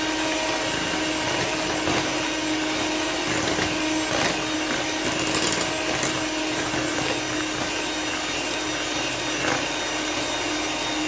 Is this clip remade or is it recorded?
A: recorded